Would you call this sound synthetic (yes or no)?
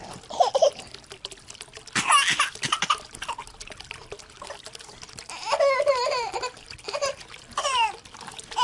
no